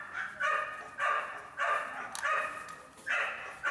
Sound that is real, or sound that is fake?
real